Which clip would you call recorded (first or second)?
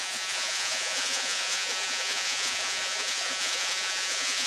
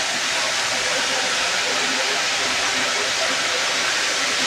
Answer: second